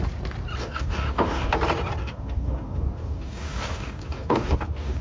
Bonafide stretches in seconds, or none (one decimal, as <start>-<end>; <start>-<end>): 0.0-0.6; 1.5-2.0